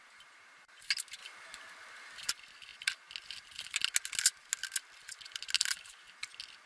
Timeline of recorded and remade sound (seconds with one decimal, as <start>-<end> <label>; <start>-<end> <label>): 0.0-6.7 recorded

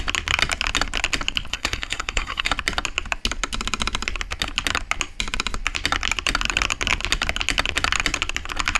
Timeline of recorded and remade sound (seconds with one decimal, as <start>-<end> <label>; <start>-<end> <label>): 0.0-1.5 recorded; 1.5-2.5 remade; 2.5-8.8 recorded

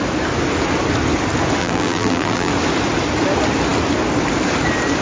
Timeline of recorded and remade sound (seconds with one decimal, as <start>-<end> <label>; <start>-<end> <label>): 0.0-1.6 recorded; 1.6-2.5 remade; 2.5-5.0 recorded